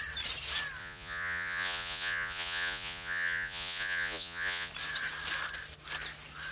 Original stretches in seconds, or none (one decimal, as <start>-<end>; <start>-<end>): 0.0-0.8; 4.7-6.5

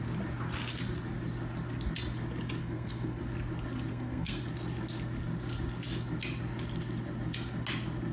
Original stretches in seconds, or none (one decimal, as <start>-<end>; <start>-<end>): 0.0-2.6; 3.2-3.9; 4.4-8.1

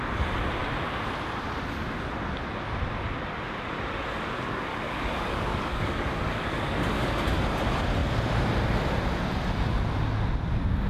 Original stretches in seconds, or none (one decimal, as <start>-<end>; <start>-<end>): 0.0-4.7; 7.1-10.9

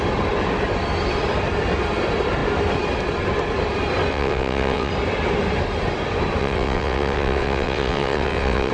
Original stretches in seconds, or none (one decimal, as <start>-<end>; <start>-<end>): 0.0-4.1; 4.9-6.4